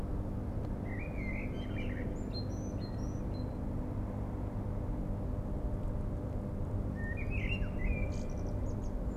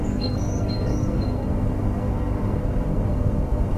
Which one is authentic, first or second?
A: first